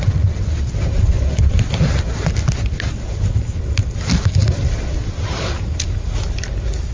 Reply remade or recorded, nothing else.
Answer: recorded